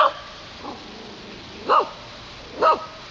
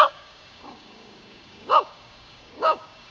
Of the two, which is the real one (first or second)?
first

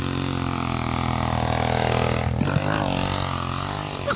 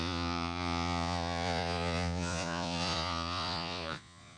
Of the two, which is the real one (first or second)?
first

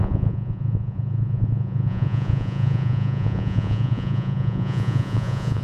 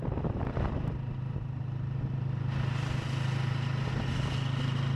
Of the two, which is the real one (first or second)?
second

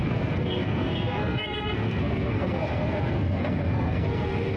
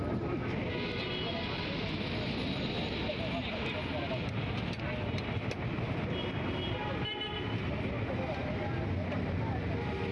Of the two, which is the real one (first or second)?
second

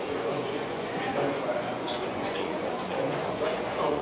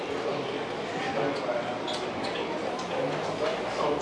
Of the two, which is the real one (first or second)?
second